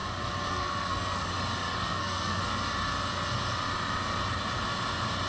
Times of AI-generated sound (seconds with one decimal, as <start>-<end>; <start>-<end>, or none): 0.5-1.3; 1.8-2.4